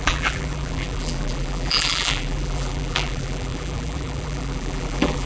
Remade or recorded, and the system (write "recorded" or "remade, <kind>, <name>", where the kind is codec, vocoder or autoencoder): remade, vocoder, BigVGAN v2